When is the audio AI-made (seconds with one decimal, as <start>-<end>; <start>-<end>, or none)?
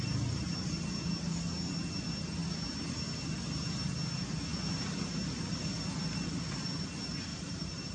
7.3-7.9